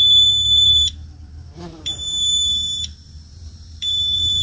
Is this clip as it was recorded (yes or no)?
no